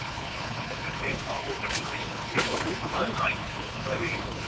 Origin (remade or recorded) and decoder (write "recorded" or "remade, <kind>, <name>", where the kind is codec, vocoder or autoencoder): remade, codec, HILCodec